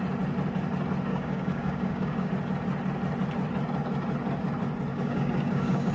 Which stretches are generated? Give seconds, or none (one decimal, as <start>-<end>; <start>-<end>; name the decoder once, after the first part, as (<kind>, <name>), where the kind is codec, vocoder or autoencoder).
1.1-2.3 (codec, DAC); 4.9-5.9